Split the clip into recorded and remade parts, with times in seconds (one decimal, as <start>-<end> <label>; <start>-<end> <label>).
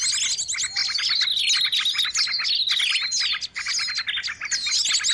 0.0-5.1 recorded